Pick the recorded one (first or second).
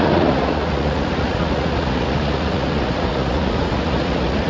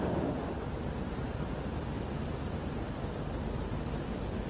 second